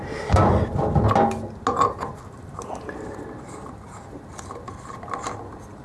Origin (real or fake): real